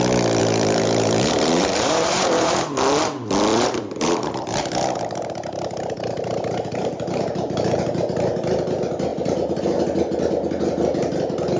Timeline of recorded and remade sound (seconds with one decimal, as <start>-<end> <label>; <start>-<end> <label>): 0.0-0.4 recorded; 0.4-2.5 remade; 2.5-3.5 recorded; 3.5-8.3 remade; 8.3-9.1 recorded; 9.1-9.6 remade; 9.6-11.6 recorded